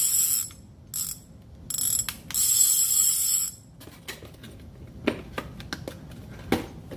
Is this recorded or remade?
recorded